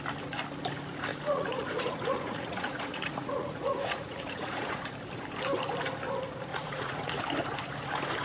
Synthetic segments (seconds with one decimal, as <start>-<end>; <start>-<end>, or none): 1.1-4.8; 6.5-7.2

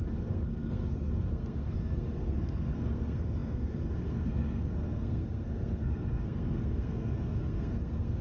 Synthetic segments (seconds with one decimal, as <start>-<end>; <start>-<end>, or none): 0.0-8.2

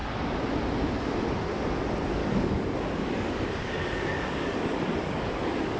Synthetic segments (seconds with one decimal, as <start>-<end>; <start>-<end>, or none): 2.2-5.8

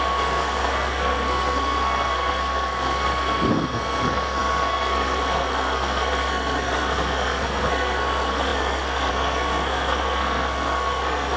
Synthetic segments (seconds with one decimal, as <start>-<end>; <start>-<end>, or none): 0.0-11.4

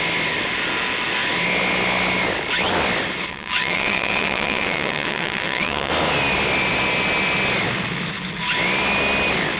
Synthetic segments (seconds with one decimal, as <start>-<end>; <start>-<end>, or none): 3.3-5.9

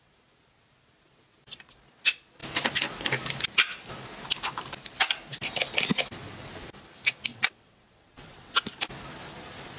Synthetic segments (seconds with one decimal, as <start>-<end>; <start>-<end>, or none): 7.3-8.6

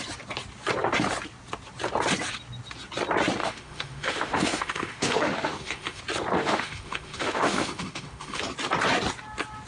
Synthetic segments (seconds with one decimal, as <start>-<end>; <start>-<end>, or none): 3.4-6.0; 6.4-8.4